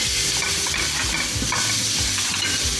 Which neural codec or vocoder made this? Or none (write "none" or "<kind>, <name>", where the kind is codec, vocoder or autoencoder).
none